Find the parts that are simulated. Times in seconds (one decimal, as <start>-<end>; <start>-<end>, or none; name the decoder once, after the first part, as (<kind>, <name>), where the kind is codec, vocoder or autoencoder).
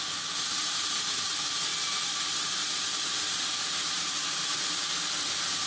0.0-1.7 (vocoder, BigVGAN v2); 3.6-5.7